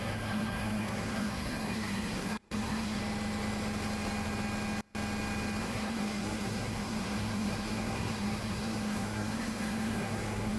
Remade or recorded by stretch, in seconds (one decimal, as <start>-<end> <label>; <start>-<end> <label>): 0.0-3.0 remade; 3.0-5.6 recorded; 5.6-10.6 remade